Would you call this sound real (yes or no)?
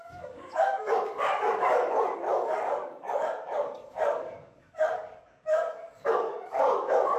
no